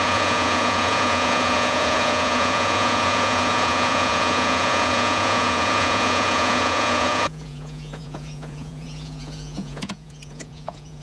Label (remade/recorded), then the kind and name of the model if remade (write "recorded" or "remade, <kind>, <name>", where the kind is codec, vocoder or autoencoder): remade, vocoder, Vocos